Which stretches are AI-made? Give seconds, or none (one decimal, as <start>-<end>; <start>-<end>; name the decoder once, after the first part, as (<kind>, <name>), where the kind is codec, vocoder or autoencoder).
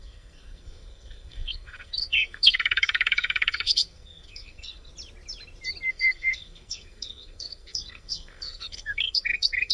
0.0-4.9 (codec, SNAC); 5.9-9.7